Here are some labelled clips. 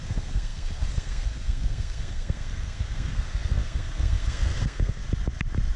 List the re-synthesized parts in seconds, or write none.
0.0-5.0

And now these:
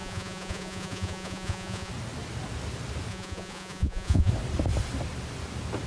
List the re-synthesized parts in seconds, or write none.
0.0-1.9; 3.1-4.3

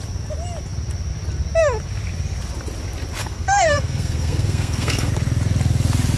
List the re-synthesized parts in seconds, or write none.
3.2-5.1

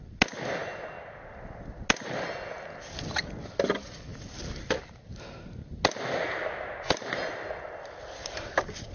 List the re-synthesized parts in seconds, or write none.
none

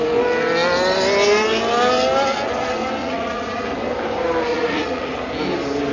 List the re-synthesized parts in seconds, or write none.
3.0-3.6; 4.5-5.1